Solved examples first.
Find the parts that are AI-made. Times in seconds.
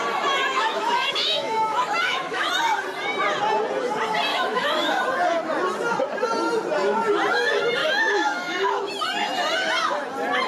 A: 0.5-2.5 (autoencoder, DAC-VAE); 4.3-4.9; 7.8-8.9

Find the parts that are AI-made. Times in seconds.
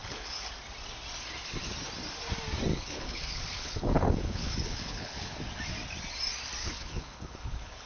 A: 0.0-0.5 (codec, HILCodec); 2.7-5.3; 6.6-7.9